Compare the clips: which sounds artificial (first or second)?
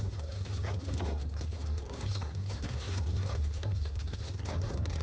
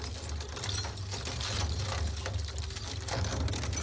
first